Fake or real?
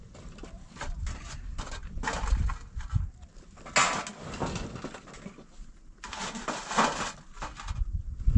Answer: real